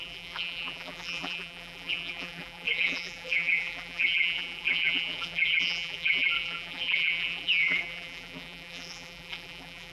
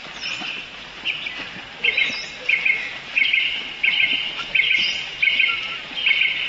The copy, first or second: first